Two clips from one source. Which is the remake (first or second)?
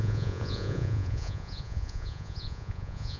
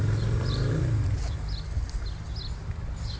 first